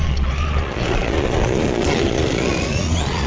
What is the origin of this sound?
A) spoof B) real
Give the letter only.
A